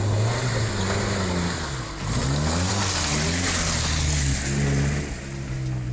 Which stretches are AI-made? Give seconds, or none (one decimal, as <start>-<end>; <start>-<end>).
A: none